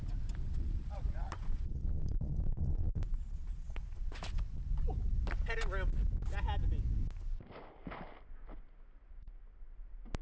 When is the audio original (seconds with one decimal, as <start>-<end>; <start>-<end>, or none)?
0.0-0.4; 4.2-10.2